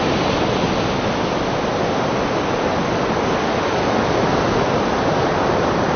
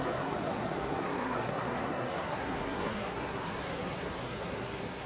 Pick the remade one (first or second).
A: second